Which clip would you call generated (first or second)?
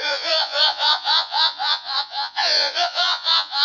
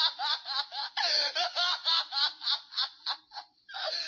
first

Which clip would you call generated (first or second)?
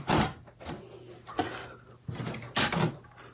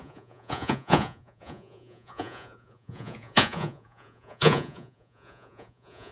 second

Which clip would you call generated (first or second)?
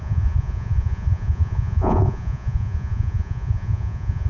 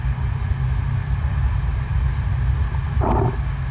first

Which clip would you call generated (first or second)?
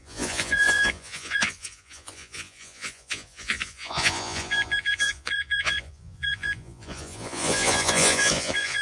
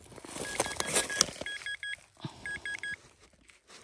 first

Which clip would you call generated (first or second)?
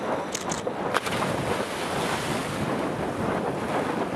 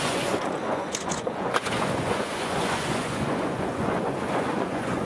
second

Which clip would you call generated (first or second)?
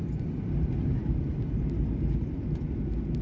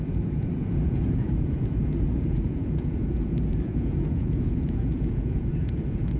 second